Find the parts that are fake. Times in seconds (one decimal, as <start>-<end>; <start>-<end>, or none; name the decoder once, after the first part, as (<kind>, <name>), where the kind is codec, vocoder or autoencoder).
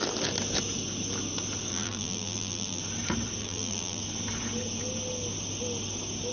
1.7-2.8 (vocoder, BigVGAN v2); 3.4-4.0